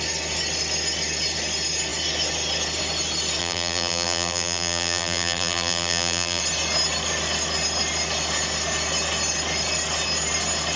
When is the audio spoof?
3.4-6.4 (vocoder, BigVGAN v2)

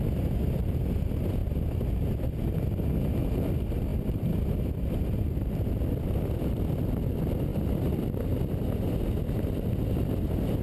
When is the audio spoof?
none

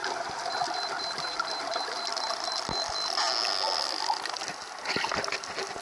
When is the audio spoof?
none

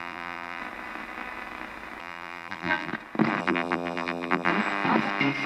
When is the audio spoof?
0.0-0.6 (vocoder, BigVGAN v2); 2.0-2.9; 3.4-4.5

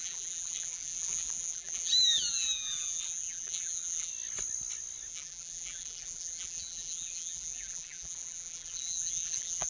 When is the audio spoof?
0.0-4.1 (vocoder, BigVGAN v2); 5.1-9.7

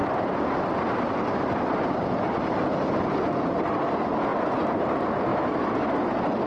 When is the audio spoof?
3.9-4.3 (vocoder, BigVGAN v2); 4.8-5.3

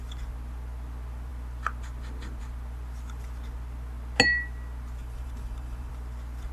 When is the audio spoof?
5.0-5.9 (vocoder, BigVGAN v2)

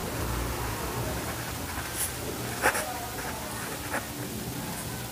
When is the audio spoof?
none